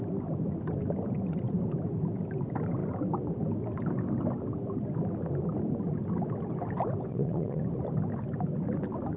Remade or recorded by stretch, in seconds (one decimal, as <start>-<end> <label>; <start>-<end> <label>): 0.0-7.1 recorded; 7.1-7.6 remade; 7.6-9.2 recorded